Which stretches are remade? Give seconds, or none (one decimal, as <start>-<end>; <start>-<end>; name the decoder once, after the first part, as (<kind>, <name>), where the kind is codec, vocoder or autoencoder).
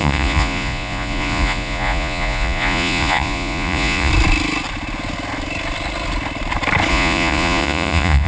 0.0-4.1 (vocoder, Vocos); 6.9-8.3